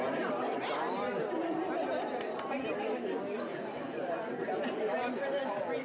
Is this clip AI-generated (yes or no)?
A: no